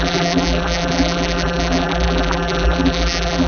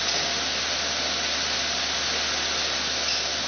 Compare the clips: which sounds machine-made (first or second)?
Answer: first